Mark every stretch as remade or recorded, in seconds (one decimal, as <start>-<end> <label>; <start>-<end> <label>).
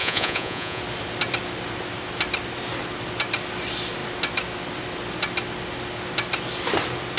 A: 0.0-0.8 remade; 0.8-7.2 recorded